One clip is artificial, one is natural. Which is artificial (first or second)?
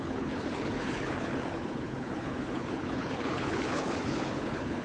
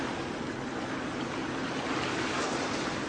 first